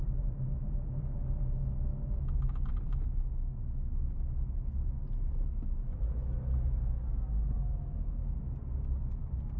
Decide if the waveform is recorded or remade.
recorded